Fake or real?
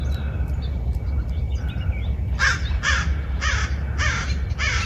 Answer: real